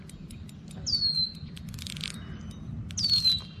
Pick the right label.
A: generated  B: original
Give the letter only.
B